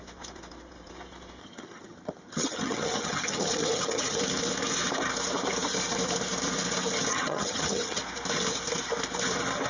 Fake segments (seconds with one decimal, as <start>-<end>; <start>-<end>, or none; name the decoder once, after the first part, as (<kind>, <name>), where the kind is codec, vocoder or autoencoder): 1.4-4.2 (vocoder, HiFi-GAN); 7.1-8.0

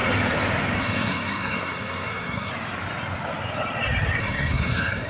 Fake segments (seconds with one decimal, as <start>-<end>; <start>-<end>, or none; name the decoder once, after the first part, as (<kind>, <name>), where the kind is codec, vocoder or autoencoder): 0.8-2.5 (codec, SNAC); 4.2-5.1

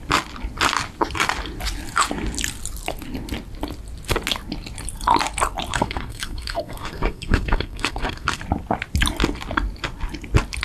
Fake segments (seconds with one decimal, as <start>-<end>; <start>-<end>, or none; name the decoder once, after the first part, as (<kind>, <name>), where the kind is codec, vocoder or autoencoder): 5.7-8.4 (codec, SNAC)

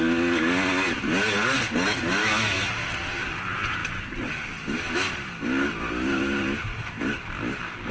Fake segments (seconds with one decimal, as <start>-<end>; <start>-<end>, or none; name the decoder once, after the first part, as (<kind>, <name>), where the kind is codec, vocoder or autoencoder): 2.2-2.7 (autoencoder, DAC-VAE)

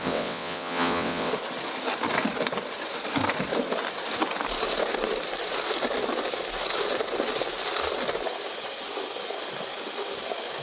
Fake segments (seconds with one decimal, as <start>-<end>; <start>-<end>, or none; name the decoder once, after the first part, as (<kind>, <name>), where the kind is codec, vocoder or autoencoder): 0.0-1.3 (vocoder, WaveNeXt)